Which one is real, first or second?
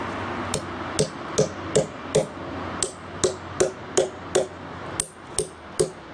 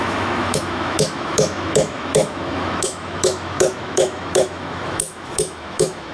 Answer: first